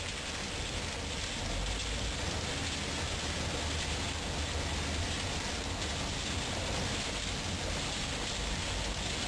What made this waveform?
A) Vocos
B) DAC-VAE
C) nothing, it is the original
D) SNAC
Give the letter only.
C